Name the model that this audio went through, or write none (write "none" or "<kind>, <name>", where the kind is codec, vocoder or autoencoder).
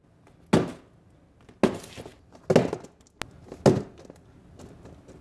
none